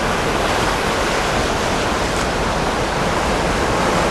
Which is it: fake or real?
real